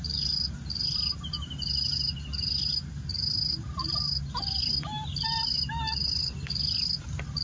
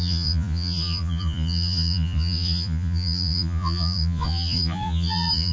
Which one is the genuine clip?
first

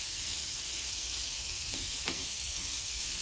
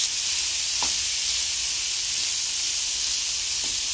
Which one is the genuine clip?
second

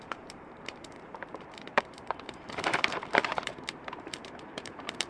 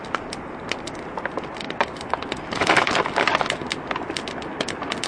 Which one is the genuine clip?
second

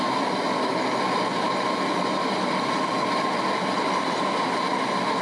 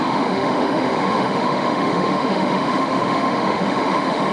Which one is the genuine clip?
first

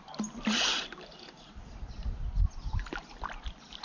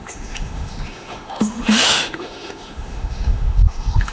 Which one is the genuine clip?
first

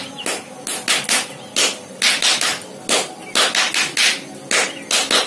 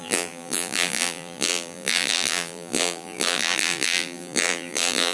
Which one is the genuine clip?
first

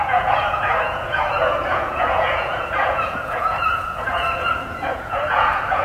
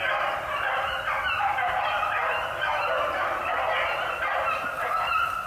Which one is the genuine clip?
second